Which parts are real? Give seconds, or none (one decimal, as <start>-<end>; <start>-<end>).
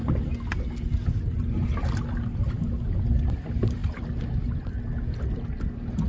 0.0-6.1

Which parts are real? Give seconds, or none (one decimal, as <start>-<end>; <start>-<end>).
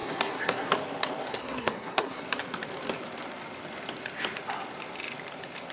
0.7-1.3; 2.2-5.7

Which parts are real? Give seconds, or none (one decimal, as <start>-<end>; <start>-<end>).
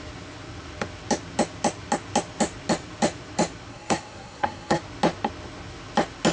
0.0-3.7; 4.8-6.3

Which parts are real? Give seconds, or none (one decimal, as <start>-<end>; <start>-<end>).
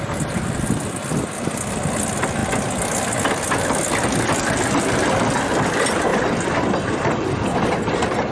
0.0-8.3